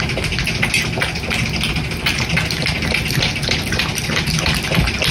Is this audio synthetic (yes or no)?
no